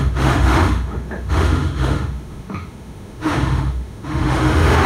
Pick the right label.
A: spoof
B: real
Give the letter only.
A